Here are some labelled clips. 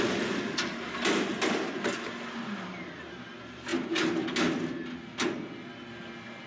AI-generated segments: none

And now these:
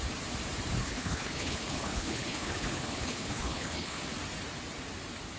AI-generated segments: 0.8-4.0 (codec, HILCodec)

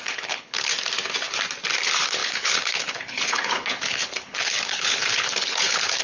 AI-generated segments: 0.0-0.7 (codec, HILCodec); 1.8-6.0

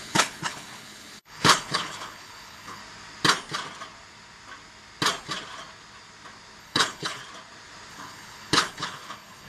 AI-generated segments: 0.0-2.8 (codec, HILCodec); 6.6-7.2; 7.9-9.5

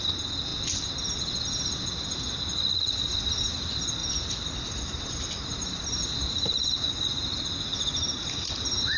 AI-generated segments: none

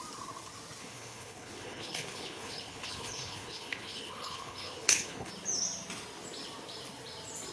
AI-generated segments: 0.8-5.3 (codec, HILCodec)

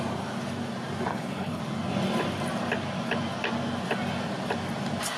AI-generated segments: 1.1-1.6 (codec, HILCodec)

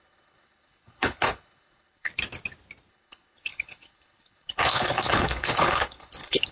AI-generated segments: 0.0-2.1 (codec, HILCodec); 2.9-6.5